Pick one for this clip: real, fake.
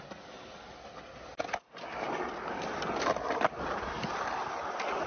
real